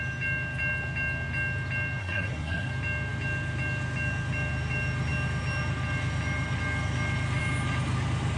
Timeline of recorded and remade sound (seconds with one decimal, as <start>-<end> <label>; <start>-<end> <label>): 0.0-2.0 recorded; 2.0-2.7 remade; 2.7-8.4 recorded